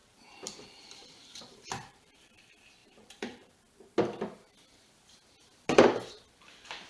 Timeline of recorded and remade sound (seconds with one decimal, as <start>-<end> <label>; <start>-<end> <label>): 0.0-2.3 remade; 2.3-2.8 recorded; 2.8-3.5 remade; 3.5-6.9 recorded